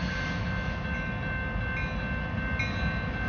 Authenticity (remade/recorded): recorded